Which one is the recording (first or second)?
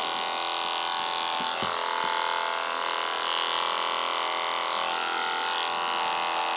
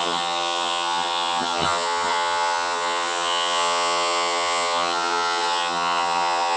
first